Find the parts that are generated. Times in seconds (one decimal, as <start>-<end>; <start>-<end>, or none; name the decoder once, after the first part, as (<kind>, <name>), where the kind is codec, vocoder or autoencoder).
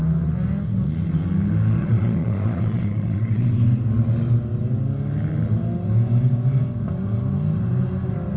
1.8-3.5 (vocoder, Vocos)